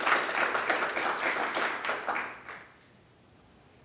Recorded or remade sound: recorded